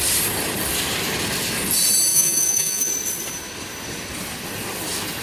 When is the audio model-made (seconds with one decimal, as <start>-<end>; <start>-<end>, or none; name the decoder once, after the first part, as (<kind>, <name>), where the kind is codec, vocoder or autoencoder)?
2.1-2.9 (vocoder, Vocos)